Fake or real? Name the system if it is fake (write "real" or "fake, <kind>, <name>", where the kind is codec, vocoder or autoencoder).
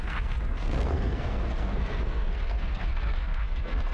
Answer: fake, codec, SNAC